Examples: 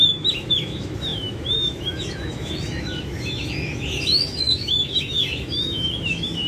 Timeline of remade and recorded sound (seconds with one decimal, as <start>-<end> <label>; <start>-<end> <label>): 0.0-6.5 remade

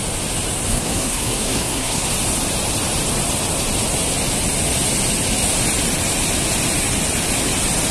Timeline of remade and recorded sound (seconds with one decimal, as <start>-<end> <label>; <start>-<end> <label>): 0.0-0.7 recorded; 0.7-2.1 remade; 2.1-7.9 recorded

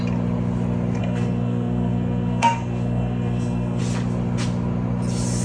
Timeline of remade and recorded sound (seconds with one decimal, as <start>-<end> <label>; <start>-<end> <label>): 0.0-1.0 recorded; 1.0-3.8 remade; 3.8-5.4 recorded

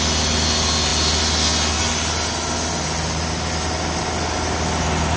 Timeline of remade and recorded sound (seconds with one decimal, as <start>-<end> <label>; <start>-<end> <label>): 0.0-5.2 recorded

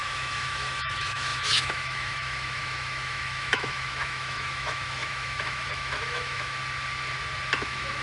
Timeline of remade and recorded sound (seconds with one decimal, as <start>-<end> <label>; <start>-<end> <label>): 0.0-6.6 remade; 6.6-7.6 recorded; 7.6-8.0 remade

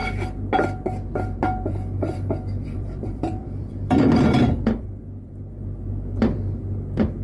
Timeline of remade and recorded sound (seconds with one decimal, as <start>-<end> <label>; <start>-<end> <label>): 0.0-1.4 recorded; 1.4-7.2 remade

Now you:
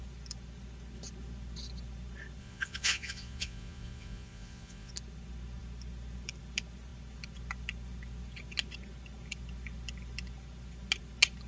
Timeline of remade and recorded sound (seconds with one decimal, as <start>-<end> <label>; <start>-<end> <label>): 0.0-2.4 recorded; 2.4-4.9 remade; 4.9-11.5 recorded